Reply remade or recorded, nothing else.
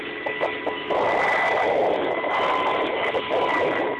recorded